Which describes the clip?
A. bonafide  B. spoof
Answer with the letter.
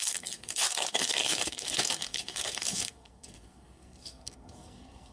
B